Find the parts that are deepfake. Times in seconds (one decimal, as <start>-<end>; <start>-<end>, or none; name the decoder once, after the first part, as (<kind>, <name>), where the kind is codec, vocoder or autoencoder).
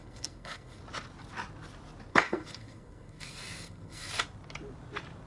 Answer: 0.0-0.8 (codec, SNAC); 2.1-4.1